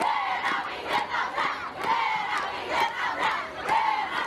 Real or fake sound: real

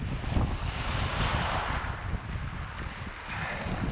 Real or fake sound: real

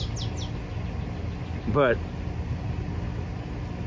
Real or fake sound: real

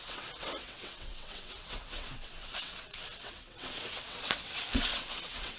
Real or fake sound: fake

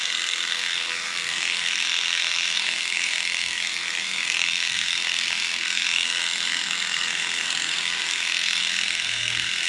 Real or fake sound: fake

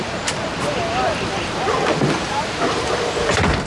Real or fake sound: real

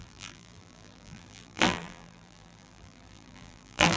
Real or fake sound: fake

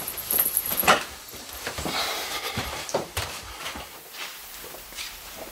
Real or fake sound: fake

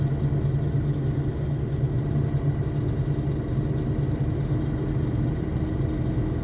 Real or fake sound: real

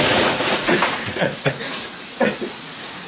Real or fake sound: fake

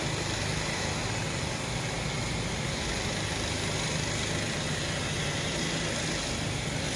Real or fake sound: real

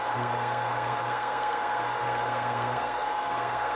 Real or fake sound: fake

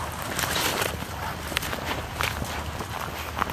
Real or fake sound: real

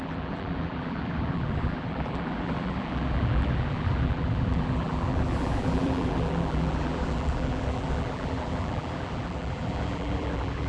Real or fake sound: fake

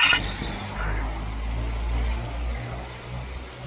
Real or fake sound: real